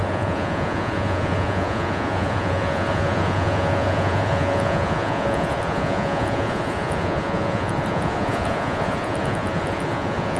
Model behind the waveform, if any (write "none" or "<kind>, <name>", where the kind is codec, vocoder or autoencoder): vocoder, Vocos